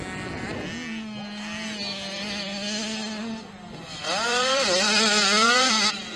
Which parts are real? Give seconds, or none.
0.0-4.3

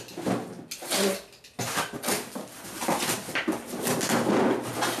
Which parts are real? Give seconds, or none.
0.0-5.0